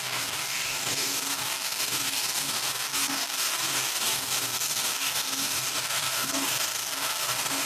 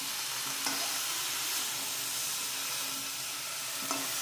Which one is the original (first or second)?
second